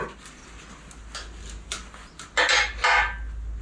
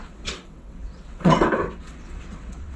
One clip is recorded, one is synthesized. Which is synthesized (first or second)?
second